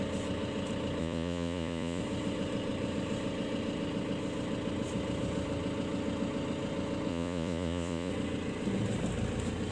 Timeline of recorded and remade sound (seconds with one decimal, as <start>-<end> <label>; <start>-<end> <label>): 0.0-1.0 recorded; 1.0-2.0 remade; 2.0-7.1 recorded; 7.1-8.1 remade; 8.1-9.7 recorded

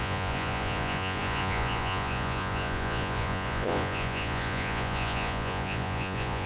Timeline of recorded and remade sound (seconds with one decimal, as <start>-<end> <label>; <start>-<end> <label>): 0.0-6.5 remade

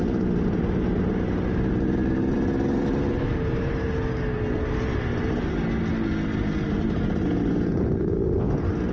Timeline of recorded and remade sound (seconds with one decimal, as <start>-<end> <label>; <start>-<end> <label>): 0.0-8.9 recorded

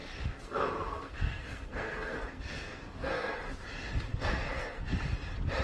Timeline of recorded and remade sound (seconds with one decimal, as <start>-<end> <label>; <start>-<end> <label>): 0.0-3.4 remade; 3.4-4.1 recorded; 4.1-4.9 remade; 4.9-5.6 recorded